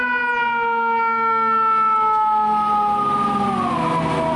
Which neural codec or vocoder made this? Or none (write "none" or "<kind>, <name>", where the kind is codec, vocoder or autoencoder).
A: none